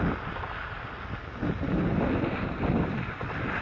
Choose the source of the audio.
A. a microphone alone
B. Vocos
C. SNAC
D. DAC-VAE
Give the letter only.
A